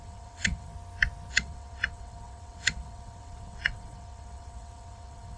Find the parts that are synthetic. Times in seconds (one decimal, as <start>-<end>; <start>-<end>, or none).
0.0-0.7; 1.3-5.4